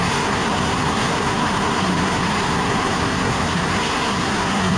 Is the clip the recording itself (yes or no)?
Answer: no